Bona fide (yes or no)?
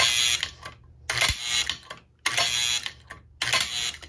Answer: yes